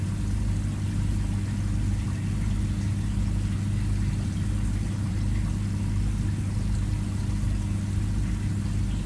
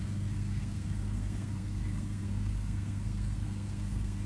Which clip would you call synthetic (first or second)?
second